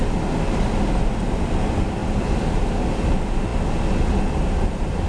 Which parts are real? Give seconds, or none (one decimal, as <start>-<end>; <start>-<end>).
0.0-5.1